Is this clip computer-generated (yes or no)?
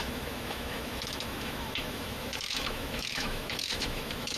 yes